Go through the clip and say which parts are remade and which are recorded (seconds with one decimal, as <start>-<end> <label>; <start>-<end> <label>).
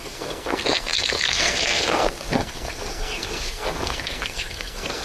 0.0-5.0 remade